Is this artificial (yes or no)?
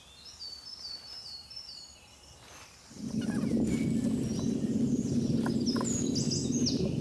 no